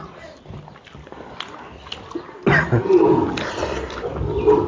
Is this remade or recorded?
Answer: recorded